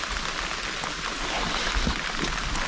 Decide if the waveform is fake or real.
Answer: real